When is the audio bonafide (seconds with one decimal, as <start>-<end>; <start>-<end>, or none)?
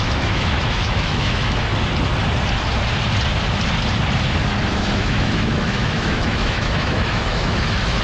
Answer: 1.7-4.7